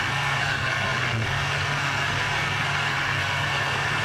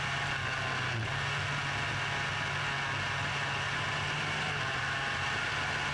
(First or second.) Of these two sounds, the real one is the second